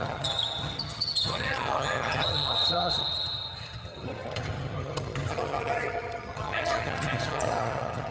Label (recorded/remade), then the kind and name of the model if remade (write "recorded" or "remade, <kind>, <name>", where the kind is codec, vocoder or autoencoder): remade, vocoder, HiFi-GAN